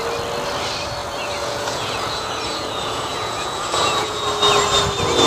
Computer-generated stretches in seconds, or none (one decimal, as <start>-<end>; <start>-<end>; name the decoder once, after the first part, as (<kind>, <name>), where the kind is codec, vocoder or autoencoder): 1.0-4.2 (vocoder, Vocos)